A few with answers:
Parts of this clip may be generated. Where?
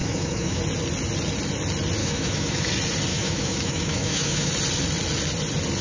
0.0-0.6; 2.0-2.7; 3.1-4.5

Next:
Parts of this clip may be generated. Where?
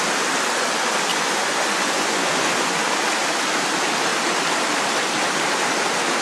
1.1-2.8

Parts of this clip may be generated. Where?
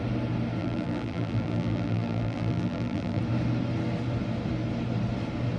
0.6-3.2